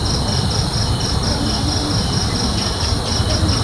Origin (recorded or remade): recorded